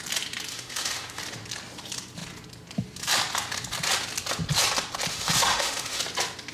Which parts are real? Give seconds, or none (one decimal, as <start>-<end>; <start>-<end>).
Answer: 0.0-0.5; 1.2-5.1; 6.0-6.5